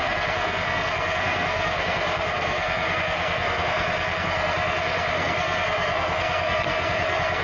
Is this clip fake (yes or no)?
yes